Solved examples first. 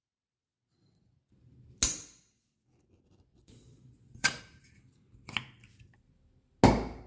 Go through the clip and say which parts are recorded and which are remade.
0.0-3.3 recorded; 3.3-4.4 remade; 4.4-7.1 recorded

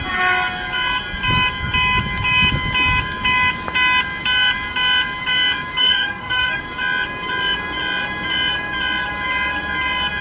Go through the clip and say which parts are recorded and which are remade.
0.0-5.8 recorded; 5.8-6.6 remade; 6.6-10.2 recorded

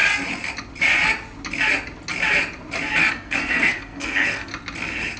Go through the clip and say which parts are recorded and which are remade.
0.0-3.1 recorded; 3.1-4.5 remade; 4.5-5.2 recorded

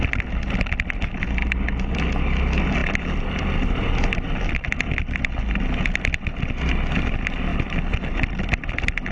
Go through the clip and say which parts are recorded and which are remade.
0.0-7.5 recorded; 7.5-8.7 remade; 8.7-9.1 recorded

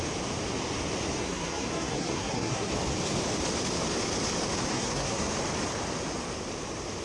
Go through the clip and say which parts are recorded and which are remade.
0.0-1.2 recorded; 1.2-2.7 remade; 2.7-4.7 recorded; 4.7-5.3 remade; 5.3-7.0 recorded

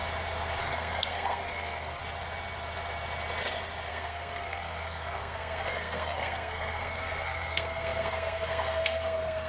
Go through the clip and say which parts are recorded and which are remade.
0.0-0.6 recorded; 0.6-2.0 remade; 2.0-3.9 recorded; 3.9-9.5 remade

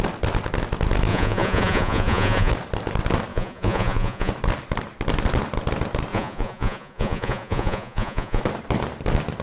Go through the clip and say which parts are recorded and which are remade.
0.0-1.1 recorded; 1.1-2.5 remade; 2.5-3.3 recorded; 3.3-4.3 remade; 4.3-6.1 recorded; 6.1-8.4 remade; 8.4-9.4 recorded